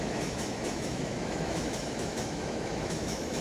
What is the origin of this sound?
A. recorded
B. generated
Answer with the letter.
B